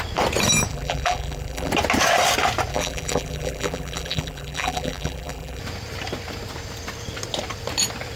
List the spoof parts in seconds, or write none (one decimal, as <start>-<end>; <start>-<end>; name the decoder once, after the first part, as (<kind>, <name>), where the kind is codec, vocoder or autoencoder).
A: 0.7-1.7 (vocoder, BigVGAN v2); 2.7-5.6

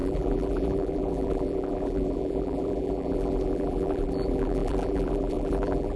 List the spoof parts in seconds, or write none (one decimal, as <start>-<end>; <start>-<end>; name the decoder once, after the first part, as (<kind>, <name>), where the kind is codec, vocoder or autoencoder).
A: 0.0-6.0 (vocoder, BigVGAN v2)